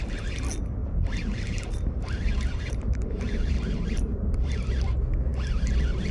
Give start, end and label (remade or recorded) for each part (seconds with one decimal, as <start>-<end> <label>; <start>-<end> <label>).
0.0-0.8 recorded; 0.8-4.5 remade; 4.5-6.1 recorded